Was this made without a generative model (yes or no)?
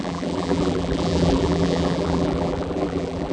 no